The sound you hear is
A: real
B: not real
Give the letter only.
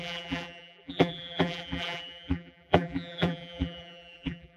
B